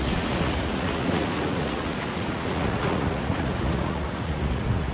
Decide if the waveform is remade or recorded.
remade